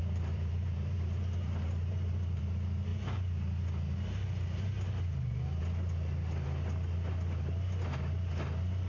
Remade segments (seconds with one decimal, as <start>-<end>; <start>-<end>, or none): 0.0-2.4